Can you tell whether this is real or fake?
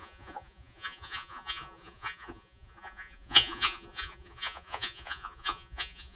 fake